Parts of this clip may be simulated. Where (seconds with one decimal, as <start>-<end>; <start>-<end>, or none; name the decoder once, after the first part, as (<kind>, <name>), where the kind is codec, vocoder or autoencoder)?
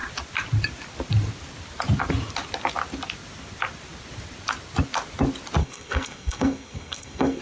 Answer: 5.6-7.4 (codec, SNAC)